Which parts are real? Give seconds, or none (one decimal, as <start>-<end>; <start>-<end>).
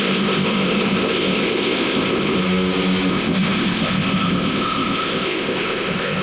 2.4-3.1